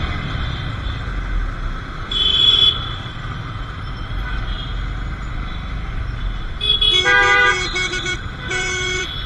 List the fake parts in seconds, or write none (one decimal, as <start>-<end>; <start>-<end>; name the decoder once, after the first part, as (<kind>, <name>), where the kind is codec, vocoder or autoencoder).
0.0-1.1 (vocoder, BigVGAN v2); 2.0-4.6; 7.9-9.3